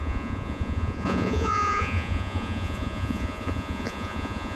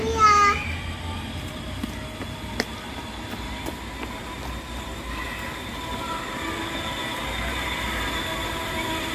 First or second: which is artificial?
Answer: first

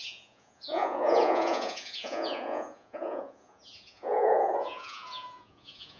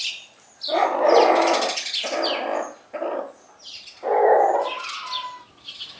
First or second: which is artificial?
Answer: first